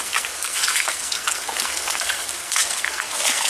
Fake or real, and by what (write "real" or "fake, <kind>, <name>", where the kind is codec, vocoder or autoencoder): fake, codec, SNAC